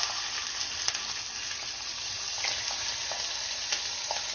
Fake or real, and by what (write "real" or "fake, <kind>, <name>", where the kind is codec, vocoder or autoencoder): real